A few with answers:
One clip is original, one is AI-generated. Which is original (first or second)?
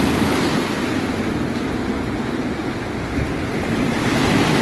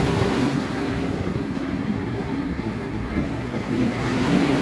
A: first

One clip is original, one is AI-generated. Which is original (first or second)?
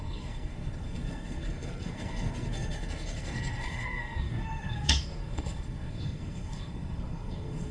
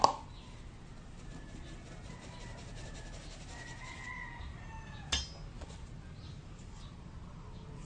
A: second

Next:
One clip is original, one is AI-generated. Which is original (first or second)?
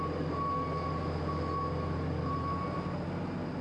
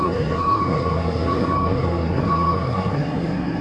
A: first